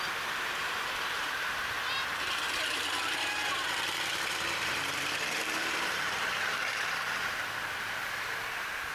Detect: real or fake fake